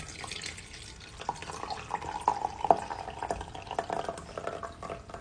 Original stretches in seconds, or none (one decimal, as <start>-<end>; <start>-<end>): 0.0-5.2